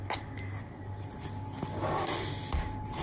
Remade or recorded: recorded